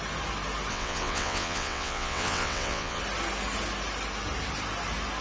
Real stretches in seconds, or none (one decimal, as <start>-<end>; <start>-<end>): 0.0-0.7; 3.0-5.2